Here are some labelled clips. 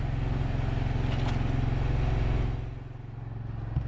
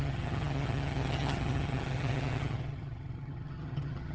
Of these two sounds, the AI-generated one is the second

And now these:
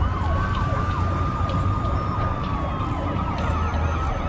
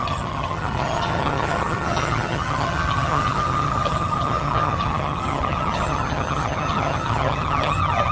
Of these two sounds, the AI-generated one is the second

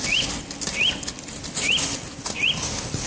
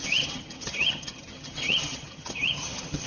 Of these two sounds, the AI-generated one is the second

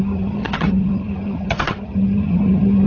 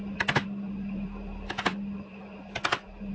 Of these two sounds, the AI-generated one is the first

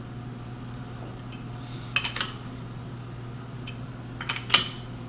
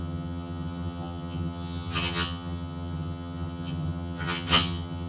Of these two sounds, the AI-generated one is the second